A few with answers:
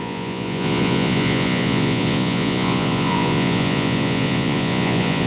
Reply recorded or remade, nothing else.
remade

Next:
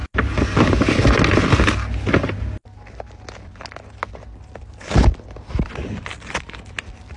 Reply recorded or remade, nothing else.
recorded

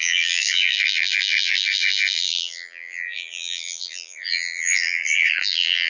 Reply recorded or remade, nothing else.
remade